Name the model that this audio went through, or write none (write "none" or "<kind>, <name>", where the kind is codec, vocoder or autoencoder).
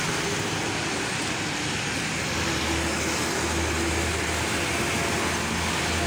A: none